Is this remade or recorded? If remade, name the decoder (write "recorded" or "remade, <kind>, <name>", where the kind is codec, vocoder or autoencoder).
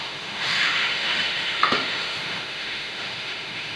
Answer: remade, autoencoder, DAC-VAE